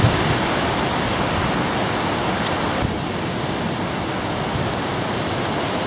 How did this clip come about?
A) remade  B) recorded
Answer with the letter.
B